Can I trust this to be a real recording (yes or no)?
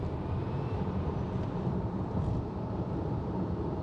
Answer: no